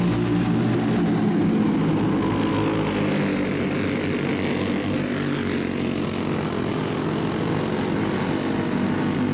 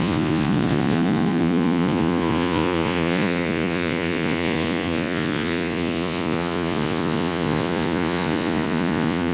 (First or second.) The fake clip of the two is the second